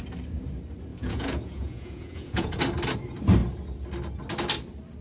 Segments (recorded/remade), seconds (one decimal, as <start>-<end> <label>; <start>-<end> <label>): 0.0-0.9 recorded; 0.9-2.6 remade; 2.6-5.0 recorded